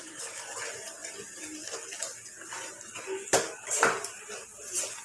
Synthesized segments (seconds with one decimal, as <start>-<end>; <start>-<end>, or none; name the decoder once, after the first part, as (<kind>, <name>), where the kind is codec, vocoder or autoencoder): none